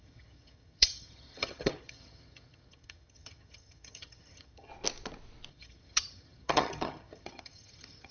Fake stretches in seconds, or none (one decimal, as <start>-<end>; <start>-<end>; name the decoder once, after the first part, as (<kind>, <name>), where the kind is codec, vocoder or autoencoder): 0.0-4.7 (vocoder, HiFi-GAN); 5.5-8.1